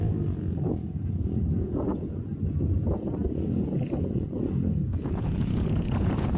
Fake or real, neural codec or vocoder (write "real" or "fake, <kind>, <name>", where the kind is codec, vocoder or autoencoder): fake, vocoder, Vocos